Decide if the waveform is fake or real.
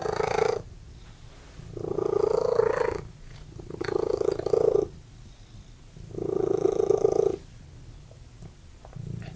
real